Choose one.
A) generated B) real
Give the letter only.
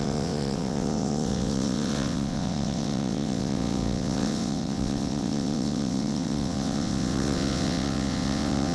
A